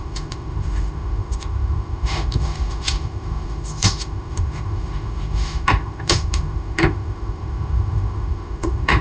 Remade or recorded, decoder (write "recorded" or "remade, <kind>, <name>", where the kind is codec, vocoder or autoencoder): remade, autoencoder, DAC-VAE